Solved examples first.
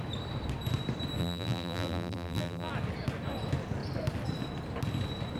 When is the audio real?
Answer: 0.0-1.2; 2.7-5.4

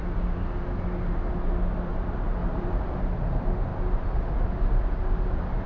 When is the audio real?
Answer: 0.0-2.4; 3.0-5.7

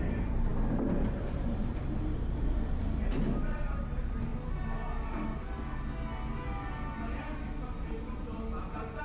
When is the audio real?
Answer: 4.3-9.0

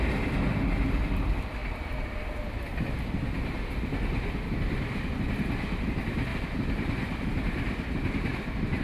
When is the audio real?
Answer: 0.0-8.8

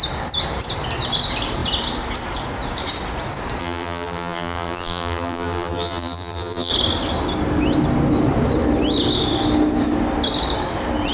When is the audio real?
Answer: 0.0-3.6; 6.7-11.1